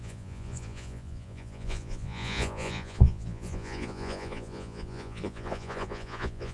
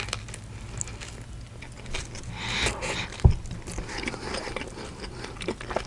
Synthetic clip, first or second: first